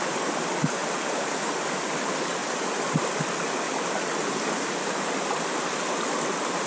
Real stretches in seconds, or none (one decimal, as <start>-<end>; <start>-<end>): 0.0-2.4